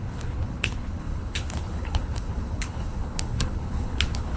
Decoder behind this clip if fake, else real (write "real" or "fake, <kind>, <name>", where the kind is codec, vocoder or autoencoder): fake, codec, HILCodec